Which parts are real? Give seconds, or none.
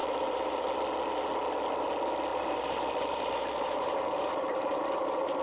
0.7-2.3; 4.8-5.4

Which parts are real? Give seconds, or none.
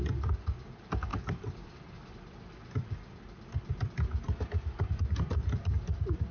0.0-6.3